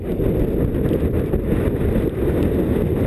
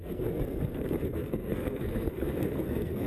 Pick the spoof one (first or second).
second